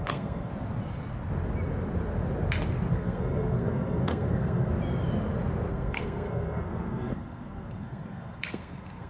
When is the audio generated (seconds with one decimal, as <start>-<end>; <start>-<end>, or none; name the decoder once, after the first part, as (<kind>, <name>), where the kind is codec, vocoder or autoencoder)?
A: 0.0-0.5 (codec, SNAC); 2.9-4.7; 5.7-9.1